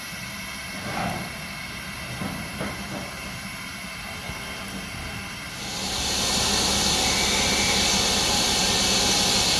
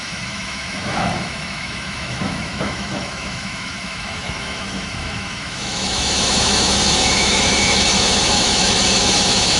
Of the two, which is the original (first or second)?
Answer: first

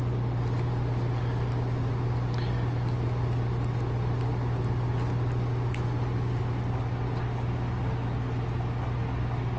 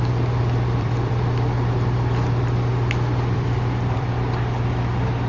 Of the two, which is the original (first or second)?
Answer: first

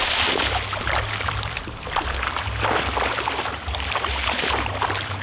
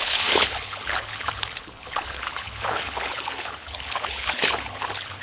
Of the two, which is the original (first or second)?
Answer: first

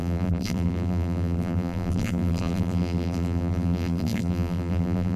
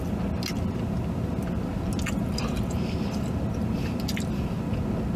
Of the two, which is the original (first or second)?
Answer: second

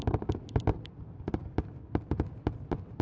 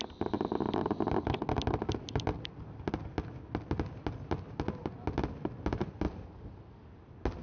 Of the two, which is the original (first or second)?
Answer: second